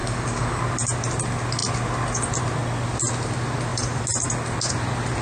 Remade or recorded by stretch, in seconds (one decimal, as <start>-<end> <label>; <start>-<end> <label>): 0.0-0.6 remade; 0.6-5.2 recorded